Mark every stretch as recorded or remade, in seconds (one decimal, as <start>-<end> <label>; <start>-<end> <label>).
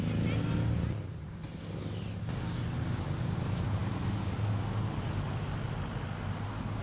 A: 0.0-6.8 recorded